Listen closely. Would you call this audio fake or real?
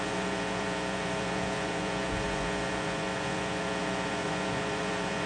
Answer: fake